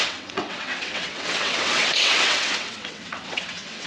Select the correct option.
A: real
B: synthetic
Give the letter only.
B